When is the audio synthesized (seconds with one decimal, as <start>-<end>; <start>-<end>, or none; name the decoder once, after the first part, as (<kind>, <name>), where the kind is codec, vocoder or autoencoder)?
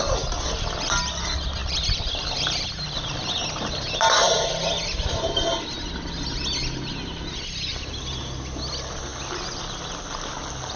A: 1.6-3.1 (vocoder, BigVGAN v2); 7.7-8.2